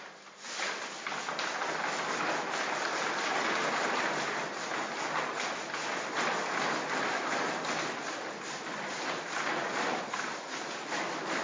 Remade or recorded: recorded